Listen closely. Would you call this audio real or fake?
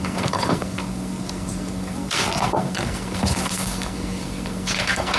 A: fake